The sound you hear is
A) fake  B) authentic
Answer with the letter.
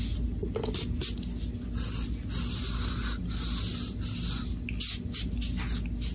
B